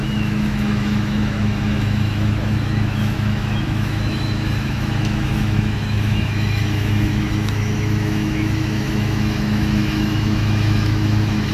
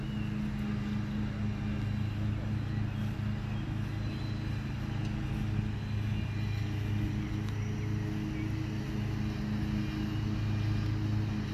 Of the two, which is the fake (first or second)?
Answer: first